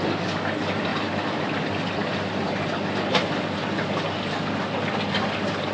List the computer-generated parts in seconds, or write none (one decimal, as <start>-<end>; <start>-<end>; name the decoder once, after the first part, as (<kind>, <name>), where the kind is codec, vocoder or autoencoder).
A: 0.9-4.2 (vocoder, BigVGAN v2)